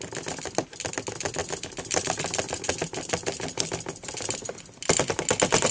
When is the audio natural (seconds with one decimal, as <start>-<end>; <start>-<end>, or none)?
0.0-1.4; 3.1-5.7